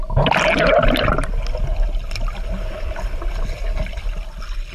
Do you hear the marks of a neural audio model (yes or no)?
no